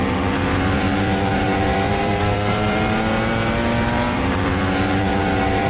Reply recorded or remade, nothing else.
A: remade